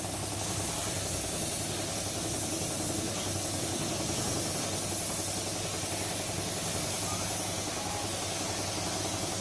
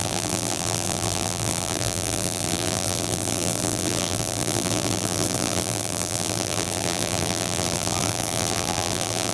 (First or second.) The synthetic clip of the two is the second